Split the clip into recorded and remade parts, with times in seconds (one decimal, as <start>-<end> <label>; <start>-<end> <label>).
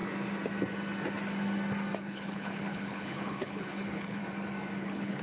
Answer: 0.0-2.0 recorded; 2.0-4.2 remade; 4.2-4.8 recorded; 4.8-5.2 remade